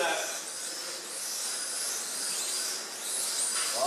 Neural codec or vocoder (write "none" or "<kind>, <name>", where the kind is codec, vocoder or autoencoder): none